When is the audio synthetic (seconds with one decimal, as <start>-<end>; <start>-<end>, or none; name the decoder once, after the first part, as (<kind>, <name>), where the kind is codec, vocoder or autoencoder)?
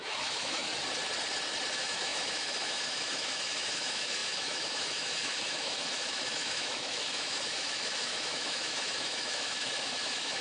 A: 0.0-0.7 (autoencoder, DAC-VAE); 1.7-10.4